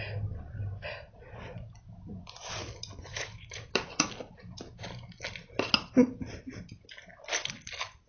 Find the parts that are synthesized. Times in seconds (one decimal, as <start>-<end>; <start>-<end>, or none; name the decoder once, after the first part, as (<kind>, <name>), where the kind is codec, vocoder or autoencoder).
3.1-3.7 (autoencoder, DAC-VAE)